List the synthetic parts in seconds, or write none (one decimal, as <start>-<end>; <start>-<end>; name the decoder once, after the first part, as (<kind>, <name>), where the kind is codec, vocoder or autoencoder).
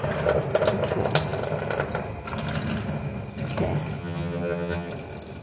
4.0-4.9 (vocoder, HiFi-GAN)